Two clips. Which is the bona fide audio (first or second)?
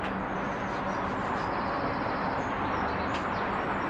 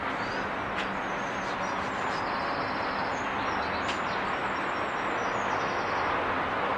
second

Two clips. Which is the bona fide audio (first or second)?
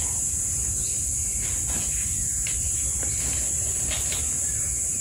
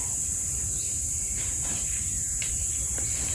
first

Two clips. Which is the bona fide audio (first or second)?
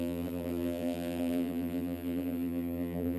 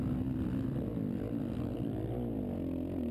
second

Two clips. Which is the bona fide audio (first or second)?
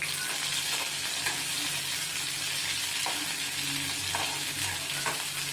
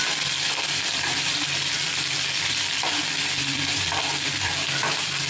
first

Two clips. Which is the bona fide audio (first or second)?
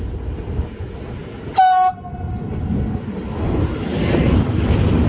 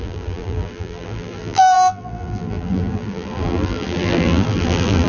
first